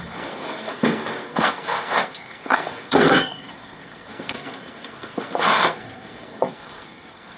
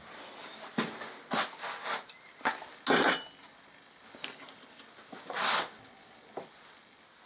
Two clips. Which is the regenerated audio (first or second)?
first